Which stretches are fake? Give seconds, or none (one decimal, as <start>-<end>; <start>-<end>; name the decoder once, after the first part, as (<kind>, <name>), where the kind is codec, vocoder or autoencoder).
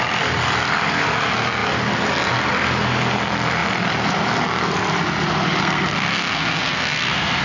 5.6-7.4 (codec, SNAC)